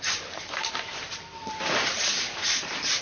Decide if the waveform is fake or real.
fake